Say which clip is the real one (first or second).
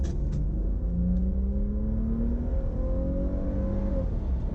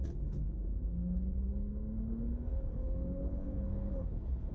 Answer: first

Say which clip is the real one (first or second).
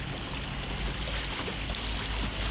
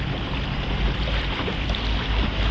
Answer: first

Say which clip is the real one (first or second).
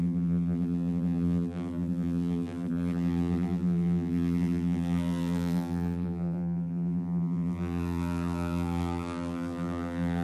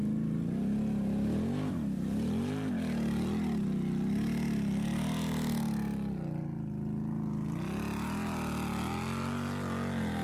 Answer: second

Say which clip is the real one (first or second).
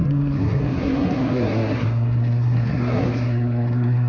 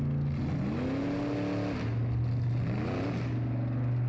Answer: second